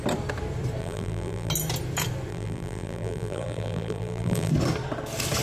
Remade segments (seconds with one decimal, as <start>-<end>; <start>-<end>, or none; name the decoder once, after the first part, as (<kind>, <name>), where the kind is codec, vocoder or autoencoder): 0.8-1.5 (vocoder, BigVGAN v2); 2.3-4.5